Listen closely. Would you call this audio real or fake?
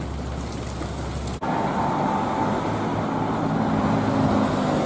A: real